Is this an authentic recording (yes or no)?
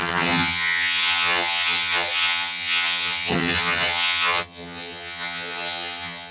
no